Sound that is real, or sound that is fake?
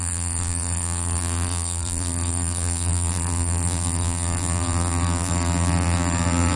fake